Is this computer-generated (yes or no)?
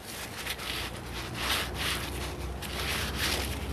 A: no